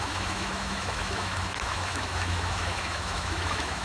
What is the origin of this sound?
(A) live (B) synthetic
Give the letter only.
B